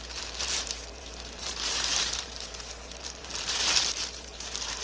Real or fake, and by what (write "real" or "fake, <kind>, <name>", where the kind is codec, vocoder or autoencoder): fake, vocoder, BigVGAN v2